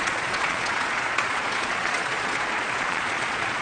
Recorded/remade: remade